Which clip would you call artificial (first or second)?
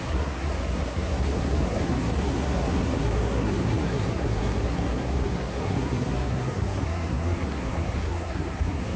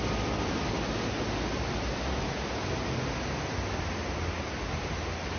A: first